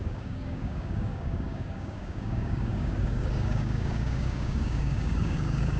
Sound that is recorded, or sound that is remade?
remade